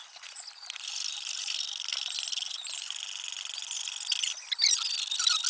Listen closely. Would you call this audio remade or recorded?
recorded